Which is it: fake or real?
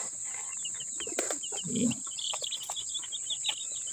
real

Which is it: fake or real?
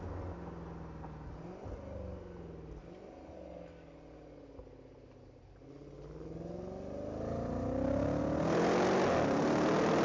real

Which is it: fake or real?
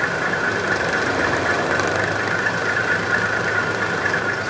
fake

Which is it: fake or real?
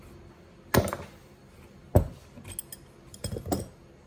real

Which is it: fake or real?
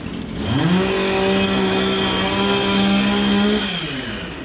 real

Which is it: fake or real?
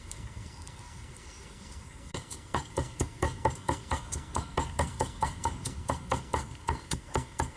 fake